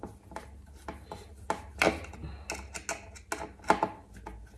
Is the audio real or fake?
real